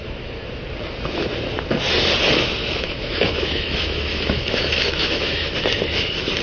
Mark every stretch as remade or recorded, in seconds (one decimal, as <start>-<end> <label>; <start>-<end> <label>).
0.0-0.6 remade; 0.6-2.6 recorded; 2.6-5.5 remade; 5.5-6.4 recorded